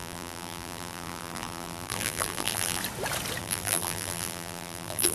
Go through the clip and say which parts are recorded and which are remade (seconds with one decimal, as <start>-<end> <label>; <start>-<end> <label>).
0.0-2.8 remade; 2.8-3.4 recorded; 3.4-5.1 remade